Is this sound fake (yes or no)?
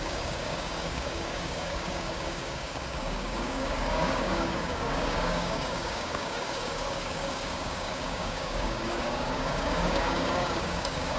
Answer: yes